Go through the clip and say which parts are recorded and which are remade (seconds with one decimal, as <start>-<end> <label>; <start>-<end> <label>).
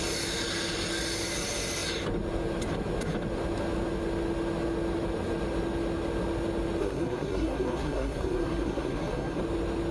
0.0-6.8 recorded; 6.8-9.4 remade; 9.4-9.9 recorded